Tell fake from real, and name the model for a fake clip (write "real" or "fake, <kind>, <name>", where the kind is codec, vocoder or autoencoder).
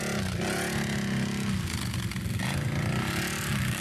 real